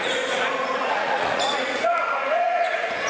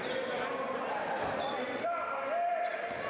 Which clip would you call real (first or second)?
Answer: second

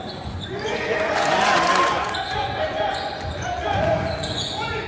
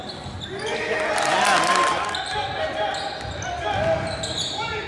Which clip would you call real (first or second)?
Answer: second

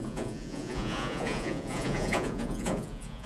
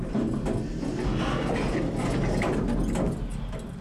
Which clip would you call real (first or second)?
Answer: second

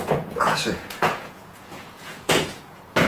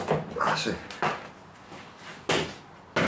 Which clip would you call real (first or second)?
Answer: second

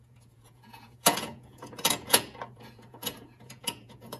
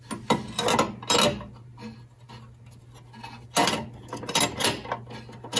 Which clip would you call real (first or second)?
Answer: second